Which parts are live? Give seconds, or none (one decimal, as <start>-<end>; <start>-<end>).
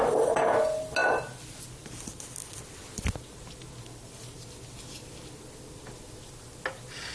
0.0-7.1